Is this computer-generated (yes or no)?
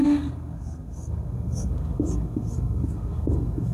yes